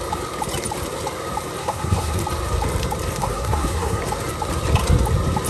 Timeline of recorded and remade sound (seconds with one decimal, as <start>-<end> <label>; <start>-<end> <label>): 0.0-1.6 recorded; 1.6-2.2 remade; 2.2-3.2 recorded; 3.2-4.0 remade; 4.0-5.5 recorded